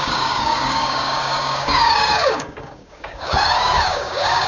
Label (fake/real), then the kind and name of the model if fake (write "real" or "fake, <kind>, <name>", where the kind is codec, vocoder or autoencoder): fake, codec, DAC